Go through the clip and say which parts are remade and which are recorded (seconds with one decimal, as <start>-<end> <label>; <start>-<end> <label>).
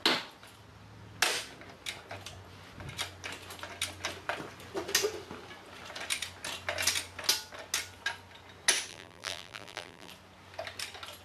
0.0-8.9 recorded; 8.9-10.1 remade; 10.1-11.2 recorded